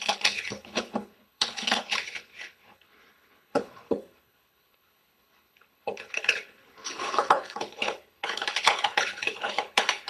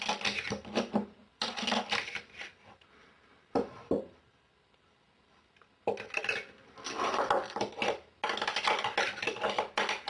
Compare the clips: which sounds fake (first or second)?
first